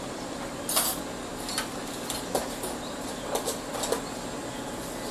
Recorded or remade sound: recorded